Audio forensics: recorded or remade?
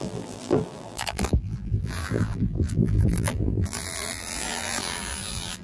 remade